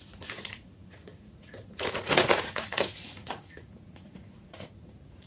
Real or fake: fake